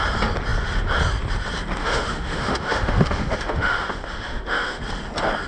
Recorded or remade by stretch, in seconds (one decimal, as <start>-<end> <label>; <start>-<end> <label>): 0.0-1.8 recorded; 1.8-4.8 remade; 4.8-5.5 recorded